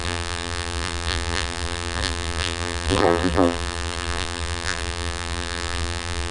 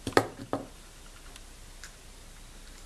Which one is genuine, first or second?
second